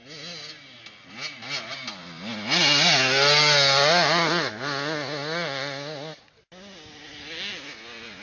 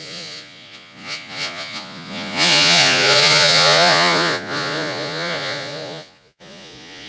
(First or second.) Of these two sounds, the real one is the first